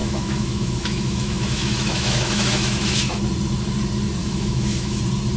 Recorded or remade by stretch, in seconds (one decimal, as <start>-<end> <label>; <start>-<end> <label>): 0.0-3.2 remade; 3.2-4.2 recorded; 4.2-5.0 remade; 5.0-5.4 recorded

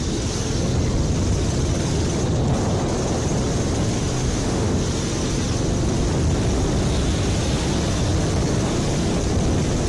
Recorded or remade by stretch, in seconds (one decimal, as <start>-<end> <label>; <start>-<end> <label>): 0.0-4.2 recorded; 4.2-4.8 remade; 4.8-9.9 recorded

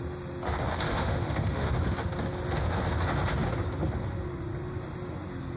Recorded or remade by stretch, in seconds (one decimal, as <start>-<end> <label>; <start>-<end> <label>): 0.0-0.9 recorded; 0.9-1.7 remade; 1.7-5.6 recorded

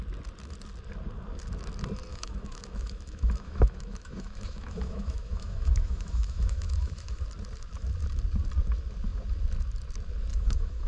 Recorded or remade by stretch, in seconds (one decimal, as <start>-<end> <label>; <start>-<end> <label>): 0.0-2.1 recorded; 2.1-7.2 remade; 7.2-10.3 recorded; 10.3-10.9 remade

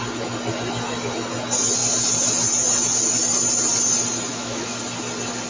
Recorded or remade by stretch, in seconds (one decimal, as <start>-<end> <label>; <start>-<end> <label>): 0.0-4.3 recorded; 4.3-4.8 remade; 4.8-5.5 recorded